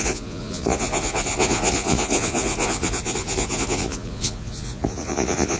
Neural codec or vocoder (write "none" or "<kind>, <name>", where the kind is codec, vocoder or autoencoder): vocoder, Vocos